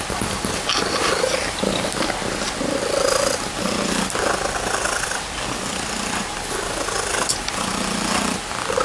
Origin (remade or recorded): recorded